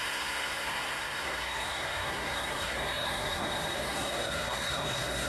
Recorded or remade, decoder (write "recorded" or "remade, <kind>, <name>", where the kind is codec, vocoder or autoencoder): remade, codec, SNAC